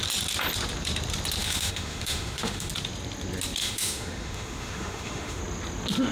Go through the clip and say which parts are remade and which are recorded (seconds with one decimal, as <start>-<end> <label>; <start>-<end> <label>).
0.0-1.4 recorded; 1.4-2.7 remade; 2.7-3.6 recorded; 3.6-5.4 remade; 5.4-6.1 recorded